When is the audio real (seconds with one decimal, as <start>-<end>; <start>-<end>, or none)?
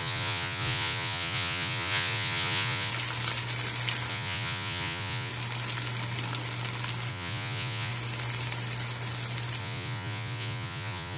2.9-4.1; 5.3-7.1; 7.9-9.6